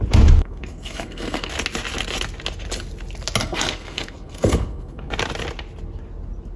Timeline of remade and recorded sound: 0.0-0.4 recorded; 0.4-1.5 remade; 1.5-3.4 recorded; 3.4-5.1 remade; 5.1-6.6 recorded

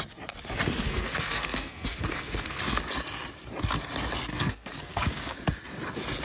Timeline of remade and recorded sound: 0.0-0.8 recorded; 0.8-2.6 remade; 2.6-4.3 recorded; 4.3-5.4 remade; 5.4-6.2 recorded

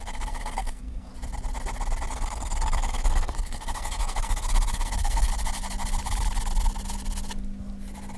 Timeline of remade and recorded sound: 0.0-1.1 remade; 1.1-2.1 recorded; 2.1-5.3 remade; 5.3-8.2 recorded

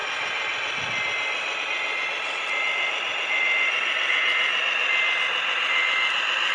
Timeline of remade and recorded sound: 0.0-6.5 recorded

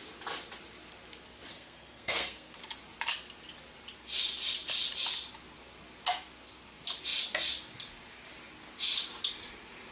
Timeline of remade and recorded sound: 0.0-1.5 recorded; 1.5-2.6 remade; 2.6-9.9 recorded